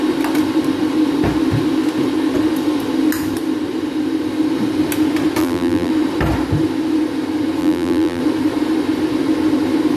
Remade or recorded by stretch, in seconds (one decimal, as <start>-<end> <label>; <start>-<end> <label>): 0.0-5.4 recorded; 5.4-5.9 remade; 5.9-7.6 recorded; 7.6-8.2 remade; 8.2-10.0 recorded